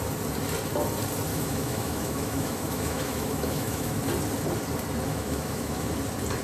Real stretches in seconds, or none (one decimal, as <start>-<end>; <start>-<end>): 0.0-1.3; 4.0-5.1; 6.0-6.4